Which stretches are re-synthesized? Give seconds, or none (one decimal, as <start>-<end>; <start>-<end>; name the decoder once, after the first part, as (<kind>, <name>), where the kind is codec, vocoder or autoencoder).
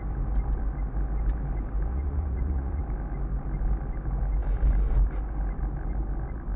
1.9-2.8 (vocoder, Vocos)